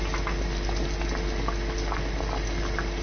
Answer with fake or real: real